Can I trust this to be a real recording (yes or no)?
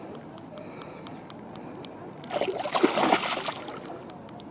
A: yes